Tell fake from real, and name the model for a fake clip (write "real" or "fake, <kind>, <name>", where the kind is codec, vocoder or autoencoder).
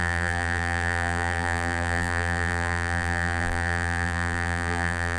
fake, vocoder, BigVGAN v2